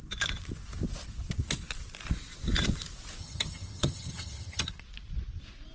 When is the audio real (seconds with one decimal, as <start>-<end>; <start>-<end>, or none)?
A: 0.0-3.2; 4.7-5.7